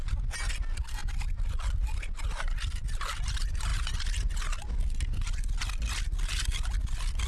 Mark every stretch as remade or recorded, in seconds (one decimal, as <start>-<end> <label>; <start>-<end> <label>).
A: 0.0-1.0 recorded; 1.0-2.6 remade; 2.6-7.3 recorded